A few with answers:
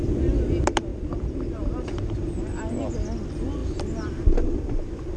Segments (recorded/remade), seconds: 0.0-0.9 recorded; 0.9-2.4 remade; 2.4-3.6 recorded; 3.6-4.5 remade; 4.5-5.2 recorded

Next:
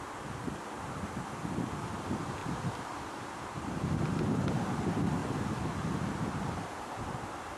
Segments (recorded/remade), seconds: 0.0-2.4 recorded; 2.4-4.2 remade; 4.2-5.2 recorded; 5.2-6.9 remade; 6.9-7.6 recorded

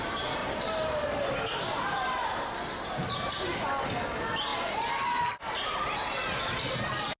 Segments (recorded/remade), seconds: 0.0-0.4 recorded; 0.4-3.4 remade; 3.4-7.2 recorded

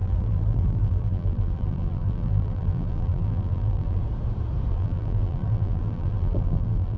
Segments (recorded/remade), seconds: 0.0-4.0 remade; 4.0-4.7 recorded; 4.7-7.0 remade

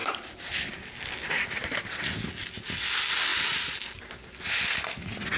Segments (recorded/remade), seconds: 0.0-0.7 remade; 0.7-1.6 recorded; 1.6-2.3 remade; 2.3-3.3 recorded; 3.3-4.0 remade; 4.0-5.4 recorded